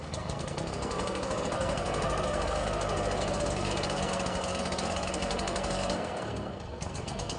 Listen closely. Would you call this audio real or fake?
fake